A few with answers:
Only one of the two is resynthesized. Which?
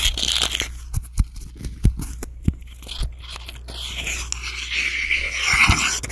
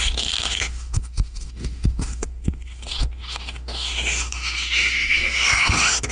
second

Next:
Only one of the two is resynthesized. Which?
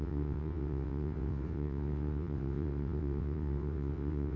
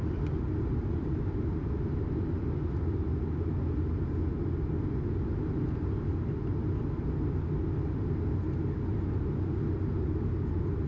first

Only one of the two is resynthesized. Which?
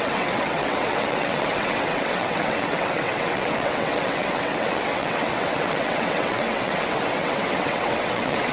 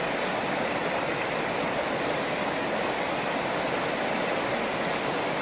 first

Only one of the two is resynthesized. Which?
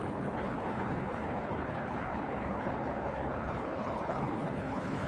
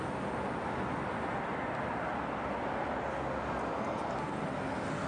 first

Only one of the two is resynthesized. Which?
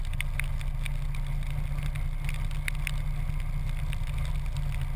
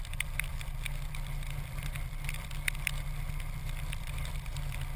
second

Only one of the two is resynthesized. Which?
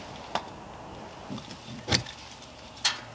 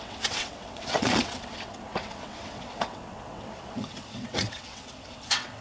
second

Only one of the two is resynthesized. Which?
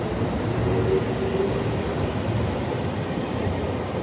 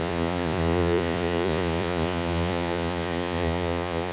second